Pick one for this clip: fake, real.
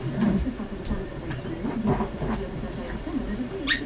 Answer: real